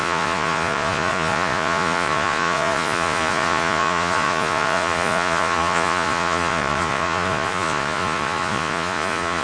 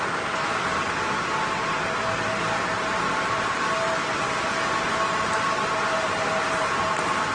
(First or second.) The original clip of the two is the second